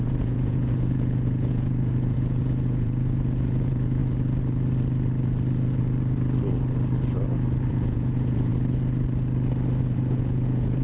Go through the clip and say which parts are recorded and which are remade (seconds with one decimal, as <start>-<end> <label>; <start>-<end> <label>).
0.0-4.0 remade; 4.0-7.7 recorded; 7.7-8.5 remade; 8.5-9.8 recorded; 9.8-10.8 remade